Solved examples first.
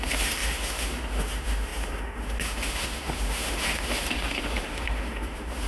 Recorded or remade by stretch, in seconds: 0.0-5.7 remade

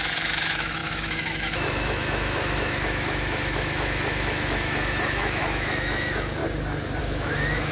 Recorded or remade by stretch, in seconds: 0.0-6.4 remade; 6.4-7.0 recorded; 7.0-7.7 remade

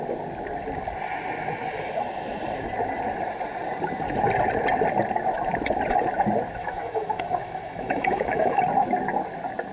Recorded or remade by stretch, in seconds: 0.0-6.6 recorded; 6.6-8.6 remade; 8.6-9.7 recorded

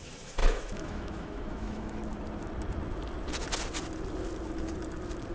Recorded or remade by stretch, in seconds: 0.0-2.0 remade; 2.0-5.3 recorded

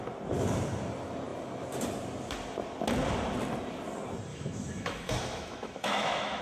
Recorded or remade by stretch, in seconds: 0.0-4.3 recorded; 4.3-6.4 remade

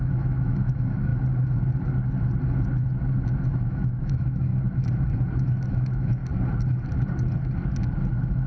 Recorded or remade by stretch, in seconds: 0.0-1.1 remade; 1.1-3.5 recorded; 3.5-4.5 remade; 4.5-5.4 recorded; 5.4-6.2 remade; 6.2-8.1 recorded; 8.1-8.5 remade

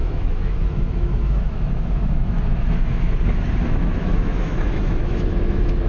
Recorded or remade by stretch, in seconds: 0.0-5.9 remade